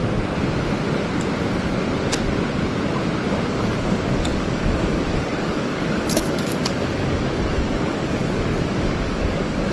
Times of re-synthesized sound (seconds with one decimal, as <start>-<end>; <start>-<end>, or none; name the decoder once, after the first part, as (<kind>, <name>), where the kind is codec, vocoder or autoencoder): 3.5-9.7 (codec, DAC)